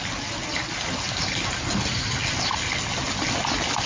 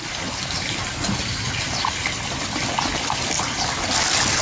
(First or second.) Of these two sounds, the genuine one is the first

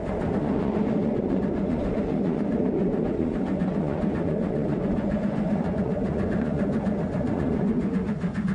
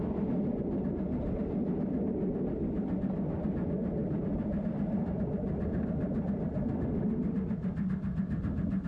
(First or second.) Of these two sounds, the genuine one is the second